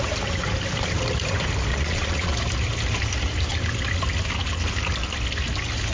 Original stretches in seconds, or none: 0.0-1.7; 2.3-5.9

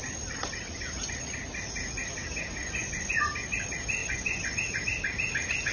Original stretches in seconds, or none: 0.0-2.6; 3.3-4.0; 4.6-5.7

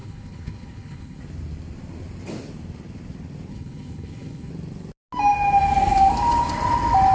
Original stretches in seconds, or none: 1.2-3.5; 4.5-7.1

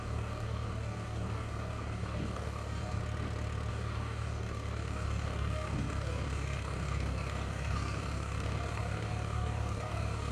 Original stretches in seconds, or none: 3.0-3.7

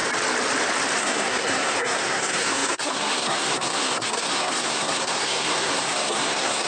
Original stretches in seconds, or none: 0.0-1.0